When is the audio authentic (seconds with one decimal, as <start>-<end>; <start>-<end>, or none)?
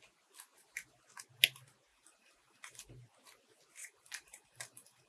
0.0-1.9; 2.8-3.8